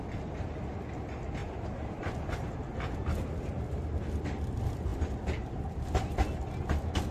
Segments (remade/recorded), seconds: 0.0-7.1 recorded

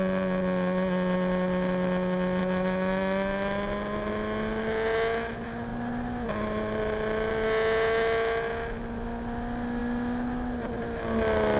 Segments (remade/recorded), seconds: 0.0-11.6 recorded

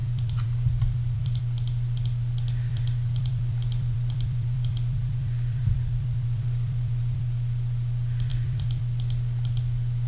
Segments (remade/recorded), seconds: 0.0-1.4 remade; 1.4-2.7 recorded; 2.7-7.2 remade; 7.2-8.3 recorded; 8.3-8.8 remade; 8.8-10.1 recorded

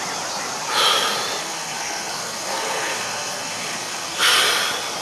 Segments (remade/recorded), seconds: 0.0-1.4 recorded; 1.4-4.4 remade; 4.4-5.0 recorded